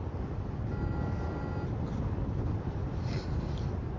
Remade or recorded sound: recorded